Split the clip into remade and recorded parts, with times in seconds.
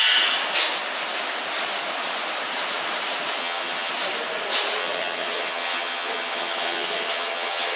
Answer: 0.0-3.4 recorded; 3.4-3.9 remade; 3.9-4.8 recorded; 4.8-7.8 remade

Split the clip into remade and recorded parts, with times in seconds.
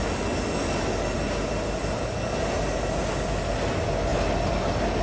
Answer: 0.0-5.0 recorded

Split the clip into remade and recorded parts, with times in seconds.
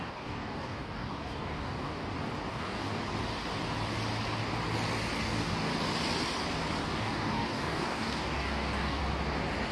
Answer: 0.0-2.0 remade; 2.0-2.5 recorded; 2.5-3.0 remade; 3.0-5.2 recorded; 5.2-5.7 remade; 5.7-6.8 recorded; 6.8-9.0 remade; 9.0-9.7 recorded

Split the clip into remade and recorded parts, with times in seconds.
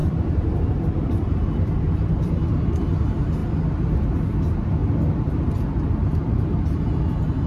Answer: 0.0-2.3 remade; 2.3-4.8 recorded; 4.8-5.4 remade; 5.4-7.5 recorded